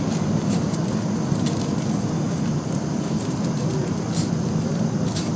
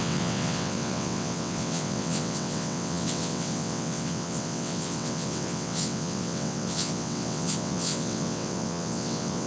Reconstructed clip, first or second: second